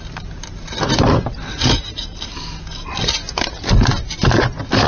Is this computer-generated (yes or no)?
no